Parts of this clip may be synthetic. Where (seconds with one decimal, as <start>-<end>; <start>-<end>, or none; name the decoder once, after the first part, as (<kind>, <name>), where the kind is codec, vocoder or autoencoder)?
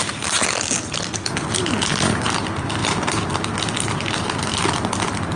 none